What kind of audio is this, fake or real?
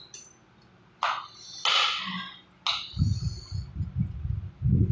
real